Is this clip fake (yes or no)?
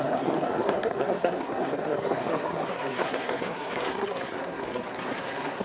yes